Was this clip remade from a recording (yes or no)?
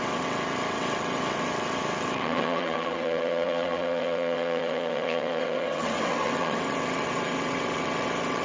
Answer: yes